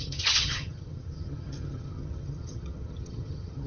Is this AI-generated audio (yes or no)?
yes